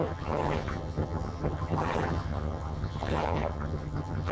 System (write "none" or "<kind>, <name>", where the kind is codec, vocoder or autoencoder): vocoder, HiFi-GAN